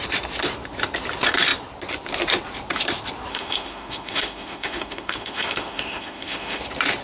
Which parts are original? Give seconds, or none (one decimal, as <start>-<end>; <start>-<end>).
0.0-3.3; 6.6-7.0